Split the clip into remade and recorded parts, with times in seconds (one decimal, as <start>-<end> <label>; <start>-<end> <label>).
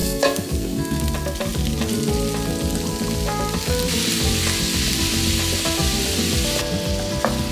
0.0-1.0 remade; 1.0-7.5 recorded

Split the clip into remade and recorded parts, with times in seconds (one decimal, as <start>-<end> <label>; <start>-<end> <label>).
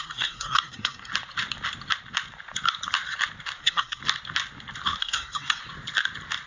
0.0-1.1 remade; 1.1-3.6 recorded; 3.6-4.0 remade; 4.0-5.0 recorded; 5.0-5.6 remade; 5.6-6.5 recorded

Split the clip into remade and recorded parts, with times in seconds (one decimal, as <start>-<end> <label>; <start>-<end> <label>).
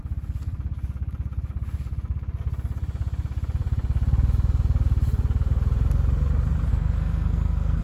0.0-6.7 recorded; 6.7-7.8 remade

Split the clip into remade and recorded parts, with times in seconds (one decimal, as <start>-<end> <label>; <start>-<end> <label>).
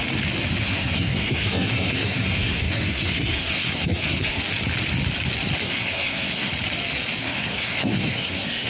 0.0-0.6 recorded; 0.6-4.4 remade; 4.4-5.6 recorded; 5.6-6.5 remade; 6.5-7.2 recorded; 7.2-8.7 remade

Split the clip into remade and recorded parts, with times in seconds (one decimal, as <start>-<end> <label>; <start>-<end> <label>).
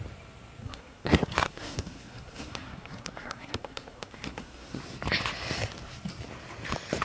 0.0-0.6 recorded; 0.6-4.8 remade; 4.8-7.0 recorded